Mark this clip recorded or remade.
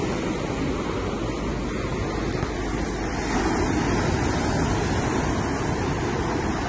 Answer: recorded